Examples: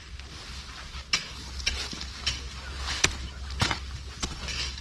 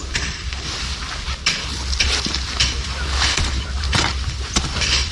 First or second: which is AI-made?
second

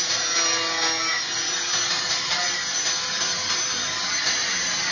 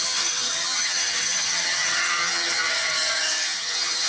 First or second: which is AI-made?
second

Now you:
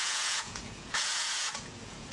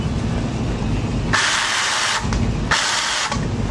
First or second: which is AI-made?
first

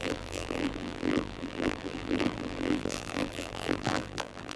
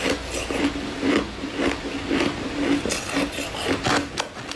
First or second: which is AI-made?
first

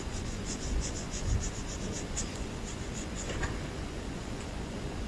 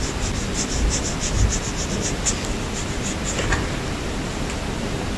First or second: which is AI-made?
first